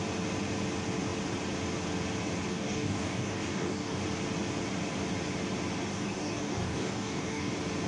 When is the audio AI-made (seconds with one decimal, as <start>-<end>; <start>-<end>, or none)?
2.5-4.0; 5.9-7.5